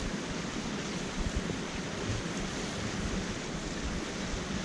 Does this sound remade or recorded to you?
recorded